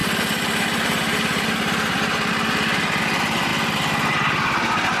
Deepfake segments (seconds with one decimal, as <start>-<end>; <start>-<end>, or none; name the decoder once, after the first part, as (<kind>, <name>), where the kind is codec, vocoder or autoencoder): none

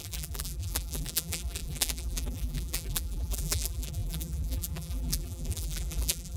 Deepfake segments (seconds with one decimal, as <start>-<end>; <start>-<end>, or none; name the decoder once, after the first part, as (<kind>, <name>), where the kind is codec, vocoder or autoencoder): 0.0-6.4 (vocoder, BigVGAN v2)

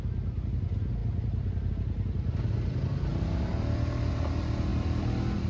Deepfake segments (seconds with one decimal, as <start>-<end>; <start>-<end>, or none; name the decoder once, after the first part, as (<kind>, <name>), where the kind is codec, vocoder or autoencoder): 1.0-1.7 (vocoder, BigVGAN v2); 3.1-4.1; 4.7-5.5

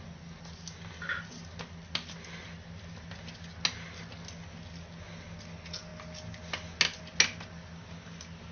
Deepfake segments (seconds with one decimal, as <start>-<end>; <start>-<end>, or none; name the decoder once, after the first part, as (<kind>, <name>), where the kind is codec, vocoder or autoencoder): none

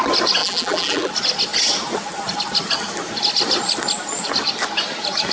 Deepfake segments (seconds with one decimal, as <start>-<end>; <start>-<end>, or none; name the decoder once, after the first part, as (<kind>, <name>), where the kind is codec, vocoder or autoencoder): 0.4-1.1 (vocoder, BigVGAN v2)

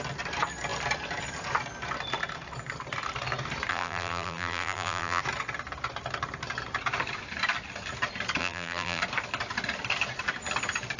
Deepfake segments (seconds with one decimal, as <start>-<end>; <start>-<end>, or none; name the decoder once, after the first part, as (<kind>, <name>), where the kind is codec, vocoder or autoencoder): 3.7-5.2 (vocoder, BigVGAN v2); 8.4-9.0

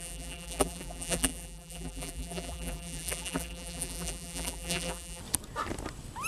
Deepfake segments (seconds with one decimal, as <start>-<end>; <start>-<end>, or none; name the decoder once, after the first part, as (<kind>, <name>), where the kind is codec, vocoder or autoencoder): 0.0-5.2 (vocoder, BigVGAN v2)